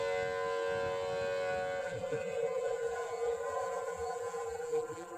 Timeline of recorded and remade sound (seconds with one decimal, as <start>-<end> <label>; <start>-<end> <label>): 0.0-1.8 recorded; 1.8-5.2 remade